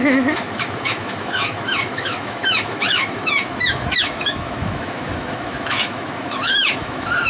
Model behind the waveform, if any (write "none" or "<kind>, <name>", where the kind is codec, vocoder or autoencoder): autoencoder, DAC-VAE